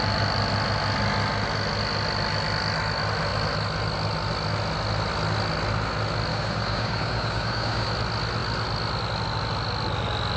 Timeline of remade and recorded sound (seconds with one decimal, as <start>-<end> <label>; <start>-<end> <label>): 0.0-6.3 recorded; 6.3-7.9 remade; 7.9-10.4 recorded